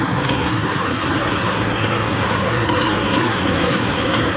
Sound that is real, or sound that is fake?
fake